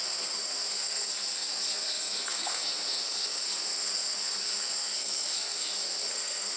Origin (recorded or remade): remade